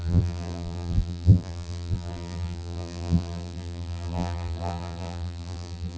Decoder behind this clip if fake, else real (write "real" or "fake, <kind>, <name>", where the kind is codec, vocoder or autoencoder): fake, vocoder, BigVGAN v2